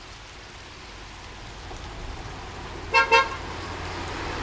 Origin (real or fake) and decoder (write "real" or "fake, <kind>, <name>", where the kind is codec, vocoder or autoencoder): real